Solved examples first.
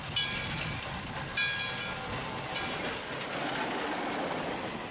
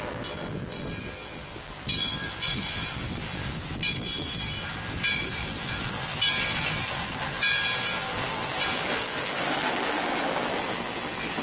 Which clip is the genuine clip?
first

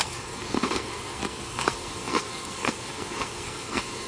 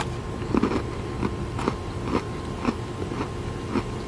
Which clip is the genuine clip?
second